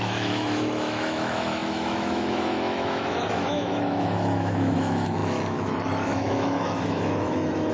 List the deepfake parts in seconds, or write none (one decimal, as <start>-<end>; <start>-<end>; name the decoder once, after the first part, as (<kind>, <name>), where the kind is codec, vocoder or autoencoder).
0.0-7.7 (autoencoder, DAC-VAE)